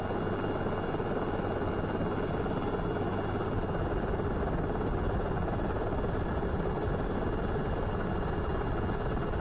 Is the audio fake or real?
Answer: real